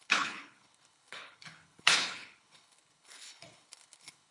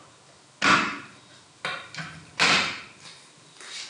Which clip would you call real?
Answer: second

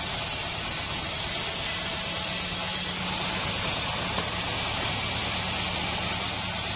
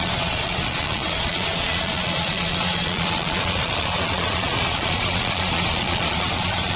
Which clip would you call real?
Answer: first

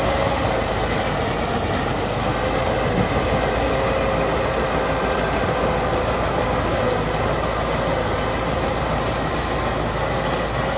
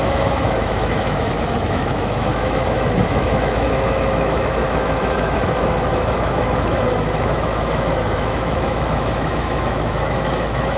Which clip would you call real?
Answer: first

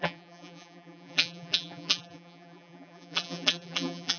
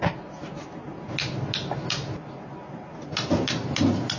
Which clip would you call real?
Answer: second